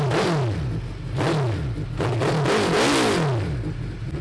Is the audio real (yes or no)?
yes